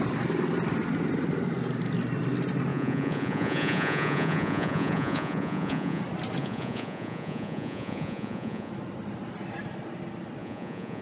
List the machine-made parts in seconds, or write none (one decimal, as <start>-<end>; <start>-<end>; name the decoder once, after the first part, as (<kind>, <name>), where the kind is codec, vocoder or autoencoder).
2.7-6.0 (vocoder, Vocos); 6.4-8.7; 10.4-11.0